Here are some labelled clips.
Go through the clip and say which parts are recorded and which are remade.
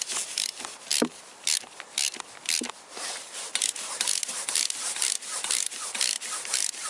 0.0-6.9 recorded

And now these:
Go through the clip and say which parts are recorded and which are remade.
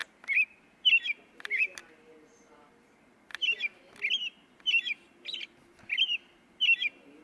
0.0-7.2 recorded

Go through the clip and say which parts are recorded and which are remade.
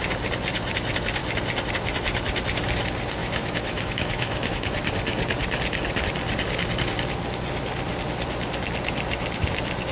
0.0-3.2 recorded; 3.2-4.7 remade; 4.7-9.9 recorded